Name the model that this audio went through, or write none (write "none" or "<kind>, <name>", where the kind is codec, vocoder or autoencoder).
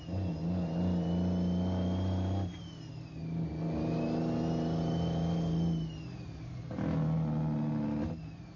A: none